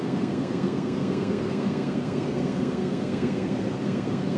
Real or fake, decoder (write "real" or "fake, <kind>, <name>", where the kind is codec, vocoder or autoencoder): fake, codec, SNAC